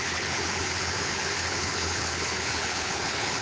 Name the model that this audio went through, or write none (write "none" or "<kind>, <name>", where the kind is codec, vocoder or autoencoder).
codec, HILCodec